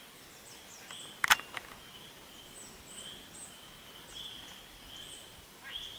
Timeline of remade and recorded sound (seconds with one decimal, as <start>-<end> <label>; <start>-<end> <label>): 0.0-6.0 recorded

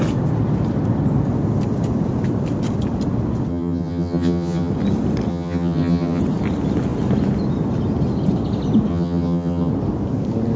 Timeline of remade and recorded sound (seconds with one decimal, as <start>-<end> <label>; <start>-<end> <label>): 0.0-3.5 recorded; 3.5-4.7 remade; 4.7-5.3 recorded; 5.3-6.2 remade; 6.2-8.9 recorded; 8.9-9.7 remade; 9.7-10.6 recorded

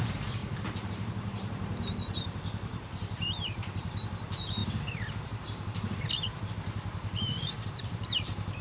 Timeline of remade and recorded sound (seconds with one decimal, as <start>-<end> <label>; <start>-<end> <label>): 0.0-0.4 remade; 0.4-0.9 recorded; 0.9-8.6 remade